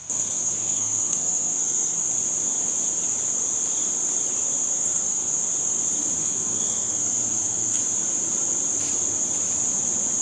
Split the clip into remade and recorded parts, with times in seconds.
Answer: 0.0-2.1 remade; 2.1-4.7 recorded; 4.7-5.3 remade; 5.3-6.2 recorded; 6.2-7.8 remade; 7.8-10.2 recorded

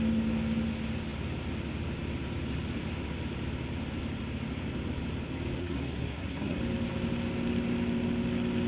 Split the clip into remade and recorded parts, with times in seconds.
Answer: 0.0-5.6 recorded; 5.6-6.6 remade; 6.6-8.7 recorded

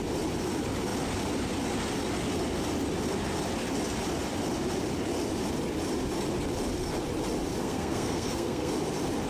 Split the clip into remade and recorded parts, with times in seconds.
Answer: 0.0-7.6 recorded; 7.6-8.7 remade; 8.7-9.3 recorded

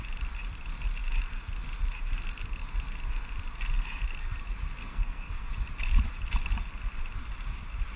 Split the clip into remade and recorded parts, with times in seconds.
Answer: 0.0-4.8 recorded; 4.8-5.5 remade; 5.5-8.0 recorded